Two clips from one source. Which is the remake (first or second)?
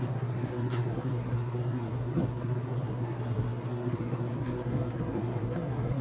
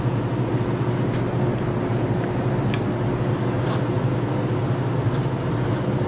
first